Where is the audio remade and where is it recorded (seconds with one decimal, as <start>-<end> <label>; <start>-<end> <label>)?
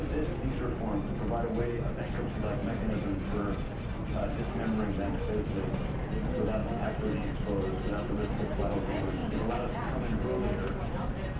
0.0-11.4 recorded